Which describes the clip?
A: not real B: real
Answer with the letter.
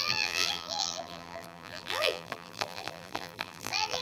A